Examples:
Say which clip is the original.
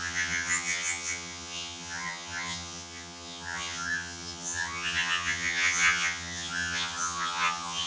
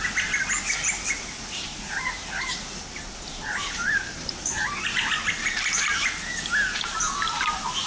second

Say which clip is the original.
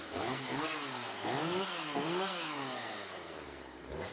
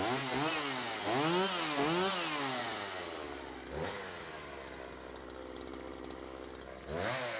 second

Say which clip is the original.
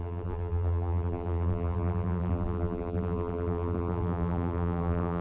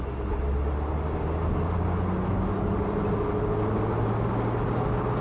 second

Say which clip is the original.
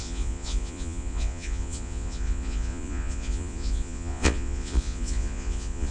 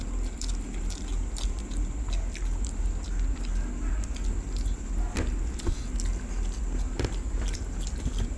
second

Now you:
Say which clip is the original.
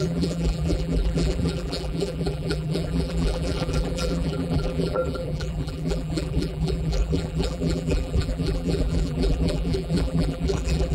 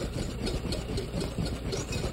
second